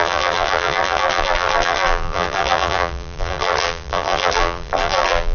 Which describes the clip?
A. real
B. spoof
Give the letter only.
B